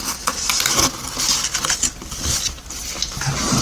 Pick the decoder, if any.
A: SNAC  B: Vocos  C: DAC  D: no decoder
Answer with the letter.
D